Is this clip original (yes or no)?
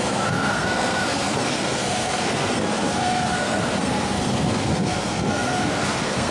no